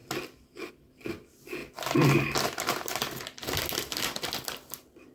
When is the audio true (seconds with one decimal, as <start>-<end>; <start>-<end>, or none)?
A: 0.0-5.1